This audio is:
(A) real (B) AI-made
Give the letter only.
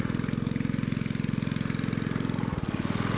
A